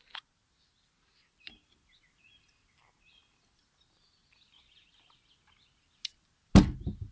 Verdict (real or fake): real